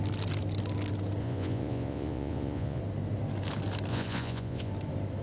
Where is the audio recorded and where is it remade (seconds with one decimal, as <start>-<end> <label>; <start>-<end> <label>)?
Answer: 0.0-1.2 recorded; 1.2-2.8 remade; 2.8-3.9 recorded; 3.9-4.7 remade; 4.7-5.2 recorded

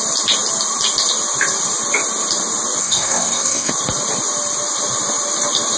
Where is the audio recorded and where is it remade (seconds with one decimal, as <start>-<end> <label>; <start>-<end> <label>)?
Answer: 0.0-2.8 recorded; 2.8-3.7 remade; 3.7-5.8 recorded